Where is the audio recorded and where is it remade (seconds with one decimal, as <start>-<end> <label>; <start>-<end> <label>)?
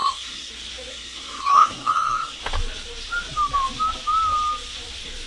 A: 0.0-0.5 remade; 0.5-0.9 recorded; 0.9-2.4 remade; 2.4-5.3 recorded